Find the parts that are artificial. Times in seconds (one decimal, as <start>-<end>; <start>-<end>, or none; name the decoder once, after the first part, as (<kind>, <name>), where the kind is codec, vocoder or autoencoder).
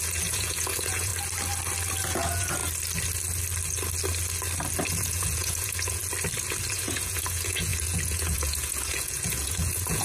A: 0.0-1.1 (vocoder, Vocos); 2.0-2.6; 4.9-6.0; 6.7-10.0